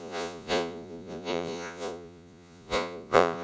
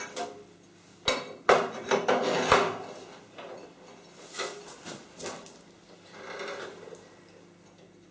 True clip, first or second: second